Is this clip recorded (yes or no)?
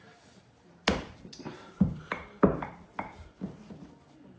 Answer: no